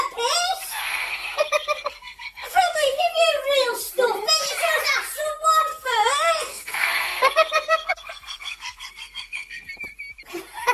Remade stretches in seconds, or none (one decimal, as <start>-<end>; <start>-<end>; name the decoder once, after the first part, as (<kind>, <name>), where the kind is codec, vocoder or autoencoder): 0.7-3.1 (codec, SNAC); 5.7-9.7

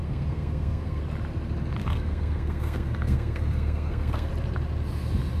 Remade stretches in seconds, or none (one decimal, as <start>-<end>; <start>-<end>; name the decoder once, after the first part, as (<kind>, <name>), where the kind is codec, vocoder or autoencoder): 0.0-1.0 (codec, SNAC); 1.8-4.3

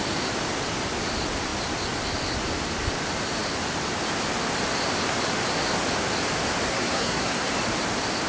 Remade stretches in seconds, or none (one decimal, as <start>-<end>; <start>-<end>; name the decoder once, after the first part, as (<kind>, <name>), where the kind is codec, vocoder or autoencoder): 6.7-7.5 (codec, SNAC)